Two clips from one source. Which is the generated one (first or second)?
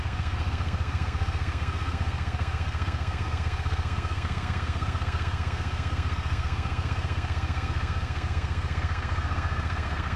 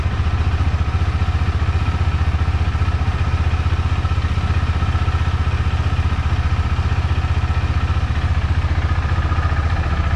first